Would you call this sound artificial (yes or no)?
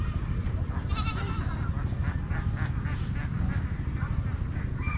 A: no